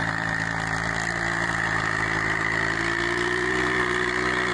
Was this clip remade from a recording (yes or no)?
yes